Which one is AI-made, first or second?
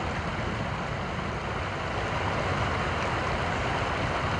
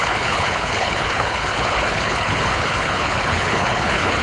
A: second